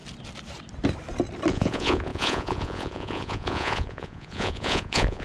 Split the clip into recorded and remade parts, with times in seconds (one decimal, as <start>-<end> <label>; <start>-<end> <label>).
0.0-1.5 recorded; 1.5-5.2 remade